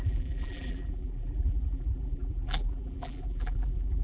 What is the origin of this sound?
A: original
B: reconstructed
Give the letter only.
B